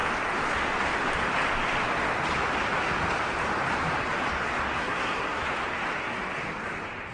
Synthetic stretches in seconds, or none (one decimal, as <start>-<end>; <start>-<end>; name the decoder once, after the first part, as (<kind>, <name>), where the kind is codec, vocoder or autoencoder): 4.8-5.4 (codec, SNAC)